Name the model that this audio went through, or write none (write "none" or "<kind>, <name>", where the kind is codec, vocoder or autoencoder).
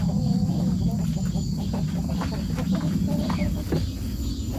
none